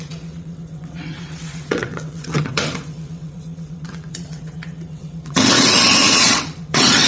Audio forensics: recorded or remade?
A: remade